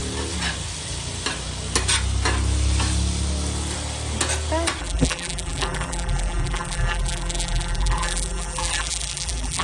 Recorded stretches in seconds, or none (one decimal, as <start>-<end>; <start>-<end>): 0.0-4.8